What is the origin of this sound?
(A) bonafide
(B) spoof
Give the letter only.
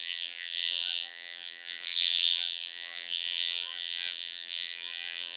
B